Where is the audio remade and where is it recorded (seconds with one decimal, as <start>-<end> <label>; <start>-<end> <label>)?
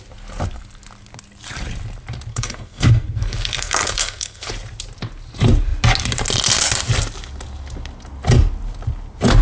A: 0.0-2.3 recorded; 2.3-4.5 remade; 4.5-9.4 recorded